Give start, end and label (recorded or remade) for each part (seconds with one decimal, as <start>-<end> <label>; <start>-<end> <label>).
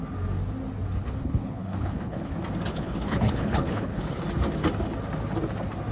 0.0-1.0 recorded; 1.0-2.3 remade; 2.3-2.7 recorded; 2.7-4.2 remade; 4.2-5.9 recorded